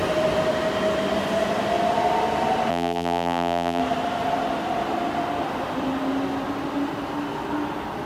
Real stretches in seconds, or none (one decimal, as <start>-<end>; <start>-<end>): 0.0-2.7; 3.8-8.1